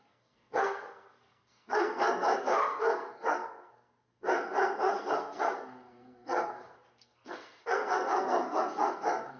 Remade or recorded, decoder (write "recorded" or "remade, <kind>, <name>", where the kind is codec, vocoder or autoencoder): remade, codec, SNAC